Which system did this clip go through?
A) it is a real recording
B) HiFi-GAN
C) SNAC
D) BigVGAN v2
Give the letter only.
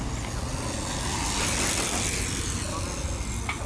A